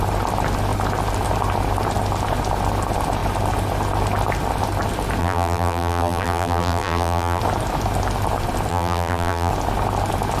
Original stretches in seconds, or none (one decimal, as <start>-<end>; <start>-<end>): 0.0-5.2; 7.4-8.7; 9.5-10.4